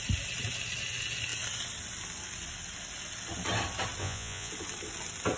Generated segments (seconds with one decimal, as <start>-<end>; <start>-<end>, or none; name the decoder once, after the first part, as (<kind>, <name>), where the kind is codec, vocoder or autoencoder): 4.0-4.5 (vocoder, Vocos)